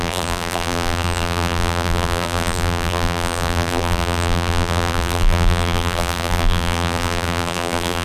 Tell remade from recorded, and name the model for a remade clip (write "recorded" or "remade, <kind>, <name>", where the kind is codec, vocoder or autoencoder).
remade, vocoder, BigVGAN v2